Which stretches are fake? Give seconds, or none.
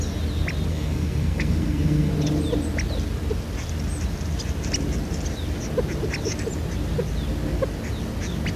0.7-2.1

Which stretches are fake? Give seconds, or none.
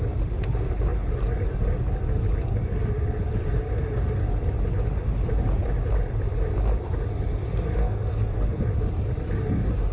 7.8-8.6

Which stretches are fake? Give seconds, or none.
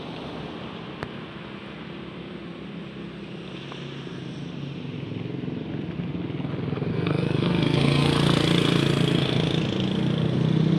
6.9-8.1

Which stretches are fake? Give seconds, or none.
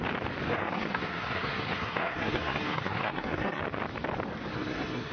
0.5-3.6; 4.5-5.1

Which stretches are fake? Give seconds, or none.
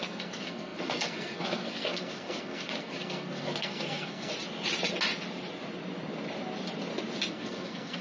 0.0-4.3; 7.3-8.0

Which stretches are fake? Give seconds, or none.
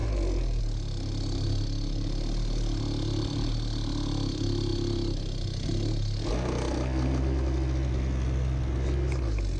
none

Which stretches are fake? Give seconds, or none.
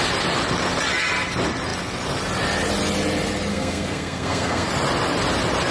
3.5-4.7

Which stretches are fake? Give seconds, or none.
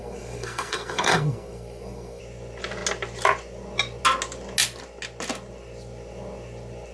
0.0-2.2